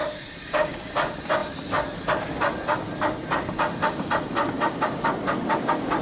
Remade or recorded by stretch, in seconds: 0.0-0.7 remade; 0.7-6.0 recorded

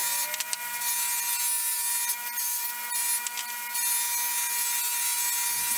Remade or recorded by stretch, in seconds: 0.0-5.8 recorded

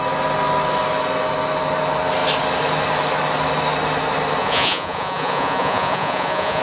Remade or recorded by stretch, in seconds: 0.0-4.4 recorded; 4.4-6.6 remade

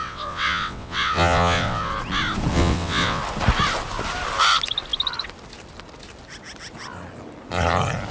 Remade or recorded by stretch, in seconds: 0.0-1.9 remade; 1.9-2.5 recorded; 2.5-3.2 remade; 3.2-8.1 recorded

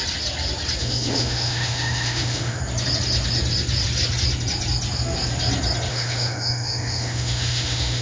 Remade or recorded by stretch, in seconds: 0.0-0.8 recorded; 0.8-2.6 remade; 2.6-5.9 recorded; 5.9-8.0 remade

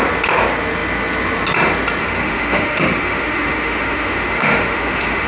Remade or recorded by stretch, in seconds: 0.0-2.0 recorded; 2.0-5.3 remade

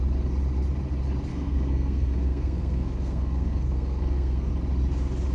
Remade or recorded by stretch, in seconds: 0.0-1.3 recorded; 1.3-4.5 remade; 4.5-5.3 recorded

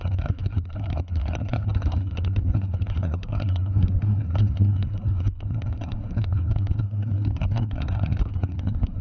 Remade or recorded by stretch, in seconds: 0.0-9.0 remade